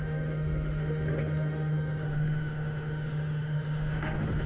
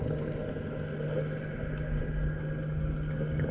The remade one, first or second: first